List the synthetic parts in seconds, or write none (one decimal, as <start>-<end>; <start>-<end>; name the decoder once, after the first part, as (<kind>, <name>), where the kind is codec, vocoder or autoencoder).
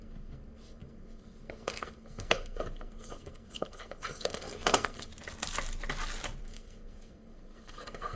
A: 0.0-5.1 (codec, SNAC); 6.4-8.2